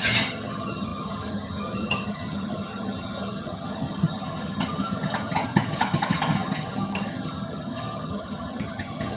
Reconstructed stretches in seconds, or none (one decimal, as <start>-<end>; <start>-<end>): 0.0-9.2